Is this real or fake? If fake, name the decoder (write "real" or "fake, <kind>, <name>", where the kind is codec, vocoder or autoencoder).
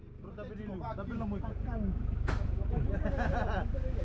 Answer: real